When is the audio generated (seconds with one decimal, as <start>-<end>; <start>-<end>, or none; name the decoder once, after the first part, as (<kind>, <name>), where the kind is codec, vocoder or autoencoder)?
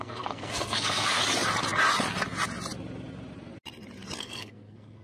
0.0-1.2 (codec, SNAC); 4.2-5.0